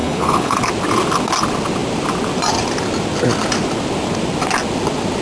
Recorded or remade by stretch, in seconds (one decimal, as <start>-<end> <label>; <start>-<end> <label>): 0.0-0.7 remade; 0.7-5.2 recorded